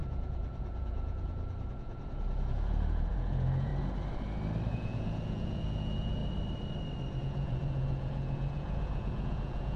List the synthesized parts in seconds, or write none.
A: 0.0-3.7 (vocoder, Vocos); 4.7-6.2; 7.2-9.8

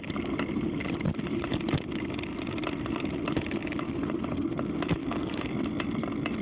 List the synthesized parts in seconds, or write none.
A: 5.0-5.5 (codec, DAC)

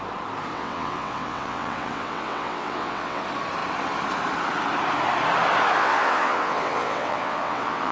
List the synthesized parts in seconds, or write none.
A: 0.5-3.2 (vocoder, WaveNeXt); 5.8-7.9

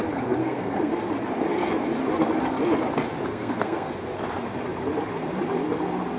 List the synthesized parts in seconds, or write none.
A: 0.4-0.9 (codec, SNAC); 3.3-3.9

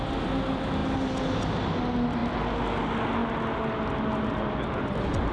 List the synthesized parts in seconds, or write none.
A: none

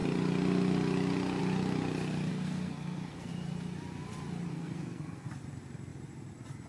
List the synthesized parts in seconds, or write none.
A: 2.3-3.3 (codec, SNAC); 4.5-5.3

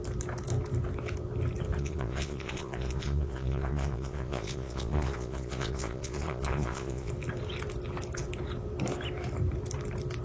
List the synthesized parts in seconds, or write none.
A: 1.8-7.1 (vocoder, Vocos)